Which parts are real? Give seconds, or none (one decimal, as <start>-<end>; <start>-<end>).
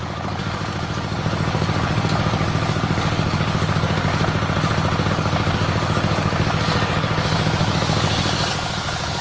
4.1-5.1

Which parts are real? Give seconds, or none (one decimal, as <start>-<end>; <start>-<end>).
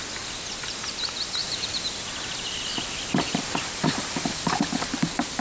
0.0-1.4; 4.6-5.4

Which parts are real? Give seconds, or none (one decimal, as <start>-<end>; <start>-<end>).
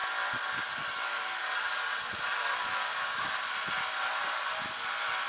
0.0-2.7; 3.3-5.3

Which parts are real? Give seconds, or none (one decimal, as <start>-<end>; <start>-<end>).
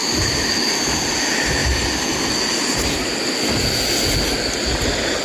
0.9-5.2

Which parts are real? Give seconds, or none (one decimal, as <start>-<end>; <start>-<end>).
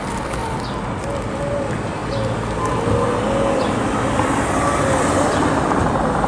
0.0-6.3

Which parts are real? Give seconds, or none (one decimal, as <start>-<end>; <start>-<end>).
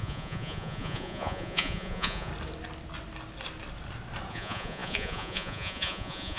2.3-4.3